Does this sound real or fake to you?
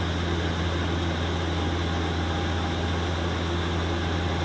real